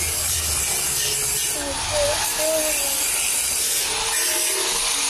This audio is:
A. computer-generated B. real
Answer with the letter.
B